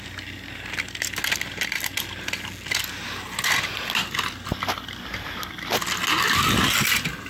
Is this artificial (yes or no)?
no